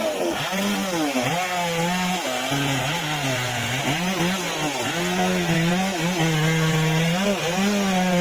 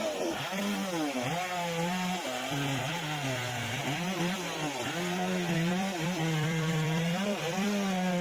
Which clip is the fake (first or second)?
second